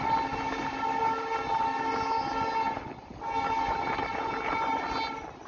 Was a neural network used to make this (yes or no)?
no